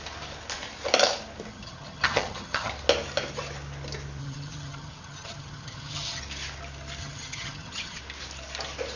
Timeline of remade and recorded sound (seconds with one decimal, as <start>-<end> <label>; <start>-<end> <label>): 0.0-1.5 recorded; 1.5-2.7 remade; 2.7-4.2 recorded; 4.2-6.2 remade; 6.2-7.0 recorded; 7.0-8.0 remade; 8.0-9.0 recorded